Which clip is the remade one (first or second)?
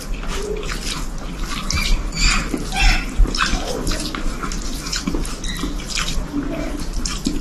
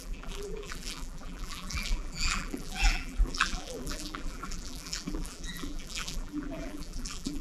second